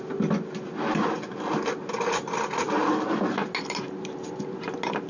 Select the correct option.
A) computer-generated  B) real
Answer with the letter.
B